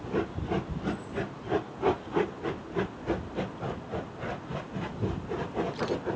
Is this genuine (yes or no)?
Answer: yes